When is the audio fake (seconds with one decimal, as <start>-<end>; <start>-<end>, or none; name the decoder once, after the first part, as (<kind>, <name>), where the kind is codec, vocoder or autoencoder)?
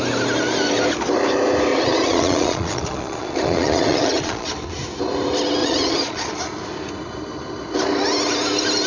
1.7-4.5 (vocoder, Vocos); 5.6-6.4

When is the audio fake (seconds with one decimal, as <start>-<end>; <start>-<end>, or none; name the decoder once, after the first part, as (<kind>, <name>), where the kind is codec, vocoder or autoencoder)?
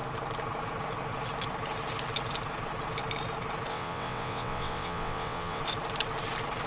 3.7-5.6 (vocoder, WaveNeXt)